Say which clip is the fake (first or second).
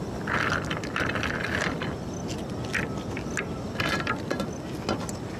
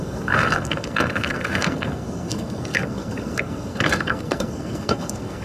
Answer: second